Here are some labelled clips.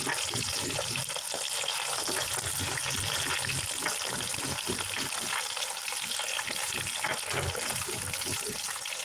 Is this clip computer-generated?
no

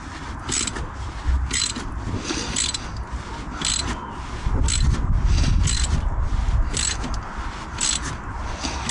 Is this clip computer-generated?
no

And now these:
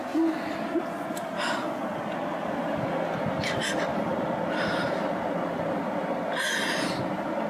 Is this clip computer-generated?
no